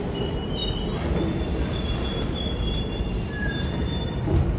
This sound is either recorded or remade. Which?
remade